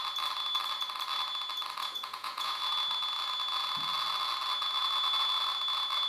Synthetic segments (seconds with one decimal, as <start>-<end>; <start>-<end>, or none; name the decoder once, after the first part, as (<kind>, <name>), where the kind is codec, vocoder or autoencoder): 1.8-2.6 (vocoder, Vocos)